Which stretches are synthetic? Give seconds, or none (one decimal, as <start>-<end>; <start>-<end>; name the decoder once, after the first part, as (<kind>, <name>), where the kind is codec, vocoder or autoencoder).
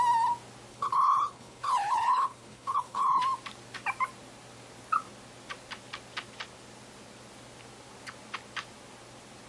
0.7-3.2 (codec, HILCodec)